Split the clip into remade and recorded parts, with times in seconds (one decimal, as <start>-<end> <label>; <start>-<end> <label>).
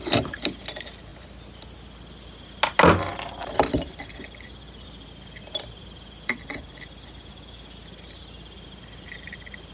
0.0-9.7 recorded